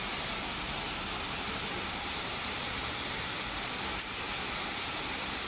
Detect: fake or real real